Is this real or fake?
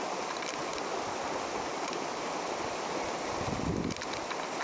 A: real